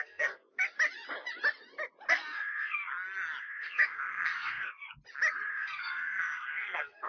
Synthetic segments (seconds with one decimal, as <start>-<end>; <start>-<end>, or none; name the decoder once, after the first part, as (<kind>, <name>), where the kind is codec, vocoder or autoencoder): 0.0-0.4 (codec, SNAC); 2.1-2.8; 3.4-4.8; 5.5-7.1